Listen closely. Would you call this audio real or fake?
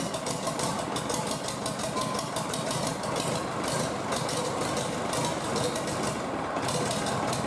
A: real